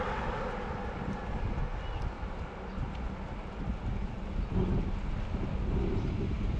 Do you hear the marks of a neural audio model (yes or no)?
no